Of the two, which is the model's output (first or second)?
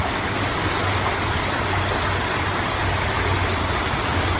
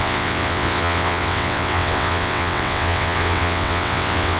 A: second